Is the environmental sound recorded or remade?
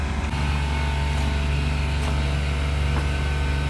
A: recorded